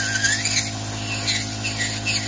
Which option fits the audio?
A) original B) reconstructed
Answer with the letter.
A